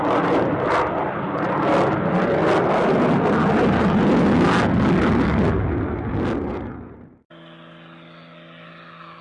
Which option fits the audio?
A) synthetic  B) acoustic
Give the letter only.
B